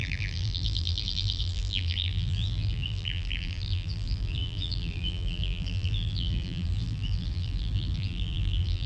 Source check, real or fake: fake